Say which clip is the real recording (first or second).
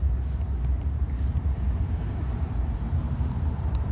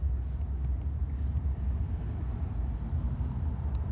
second